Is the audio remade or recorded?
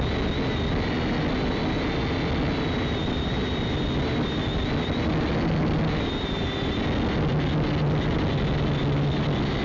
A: recorded